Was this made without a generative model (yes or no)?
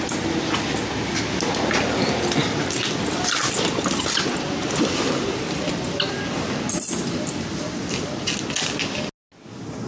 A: yes